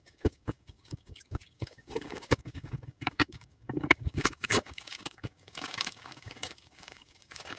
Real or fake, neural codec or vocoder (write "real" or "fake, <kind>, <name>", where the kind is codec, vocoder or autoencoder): fake, codec, DAC